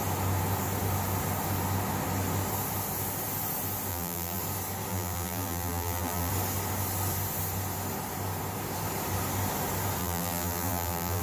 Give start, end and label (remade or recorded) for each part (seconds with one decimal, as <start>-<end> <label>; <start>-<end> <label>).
0.0-3.9 recorded; 3.9-4.4 remade; 4.4-4.9 recorded; 4.9-6.3 remade; 6.3-10.0 recorded; 10.0-11.2 remade